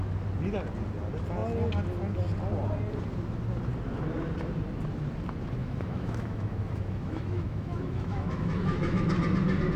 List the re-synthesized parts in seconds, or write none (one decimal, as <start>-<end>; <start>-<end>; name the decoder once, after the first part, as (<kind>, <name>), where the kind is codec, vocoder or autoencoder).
5.6-9.1 (autoencoder, DAC-VAE)